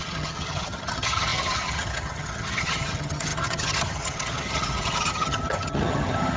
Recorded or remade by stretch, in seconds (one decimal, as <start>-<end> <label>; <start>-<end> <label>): 0.0-6.4 remade